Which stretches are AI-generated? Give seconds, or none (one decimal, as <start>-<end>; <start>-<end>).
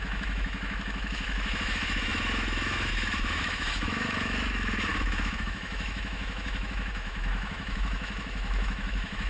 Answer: 0.0-9.3